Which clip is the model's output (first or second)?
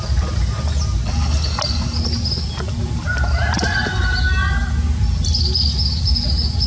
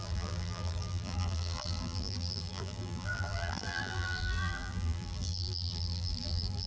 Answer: second